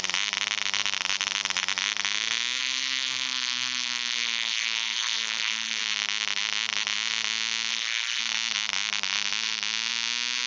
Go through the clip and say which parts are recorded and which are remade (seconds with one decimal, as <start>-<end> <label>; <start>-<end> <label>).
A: 0.0-2.6 recorded; 2.6-5.8 remade; 5.8-7.7 recorded; 7.7-8.2 remade; 8.2-10.5 recorded